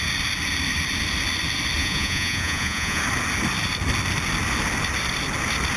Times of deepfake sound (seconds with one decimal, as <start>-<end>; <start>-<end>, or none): 1.8-3.0